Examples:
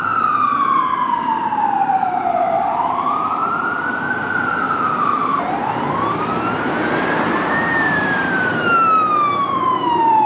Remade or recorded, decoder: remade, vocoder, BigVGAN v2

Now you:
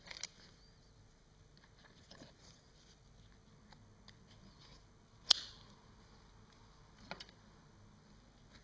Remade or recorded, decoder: recorded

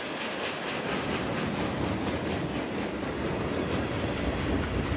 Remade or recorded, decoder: recorded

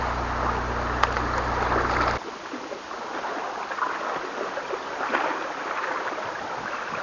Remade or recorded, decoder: recorded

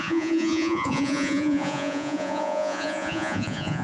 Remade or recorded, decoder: remade, vocoder, Vocos